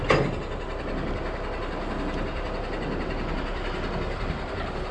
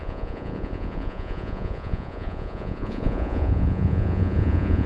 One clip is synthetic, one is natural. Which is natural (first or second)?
first